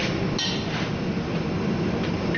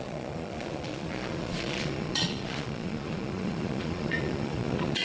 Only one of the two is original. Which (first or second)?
first